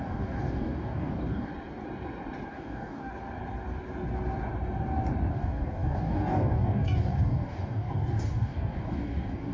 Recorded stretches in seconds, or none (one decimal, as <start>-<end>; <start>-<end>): 1.5-2.5; 3.1-5.3